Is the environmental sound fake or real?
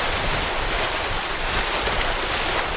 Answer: fake